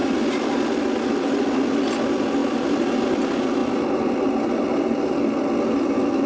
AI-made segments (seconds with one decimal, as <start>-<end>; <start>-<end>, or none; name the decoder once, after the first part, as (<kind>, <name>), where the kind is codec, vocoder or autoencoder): none